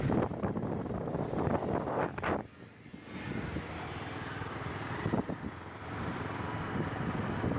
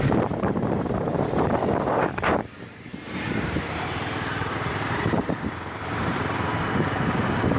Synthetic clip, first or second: second